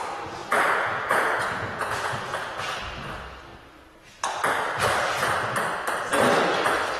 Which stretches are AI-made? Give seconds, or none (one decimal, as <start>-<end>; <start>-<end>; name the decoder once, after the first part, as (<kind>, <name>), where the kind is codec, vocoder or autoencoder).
0.4-2.8 (vocoder, Vocos)